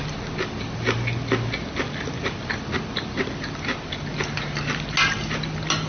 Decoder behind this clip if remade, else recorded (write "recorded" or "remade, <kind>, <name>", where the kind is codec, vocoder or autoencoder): recorded